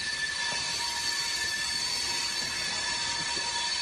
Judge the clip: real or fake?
real